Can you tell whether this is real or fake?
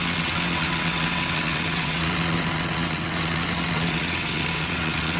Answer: fake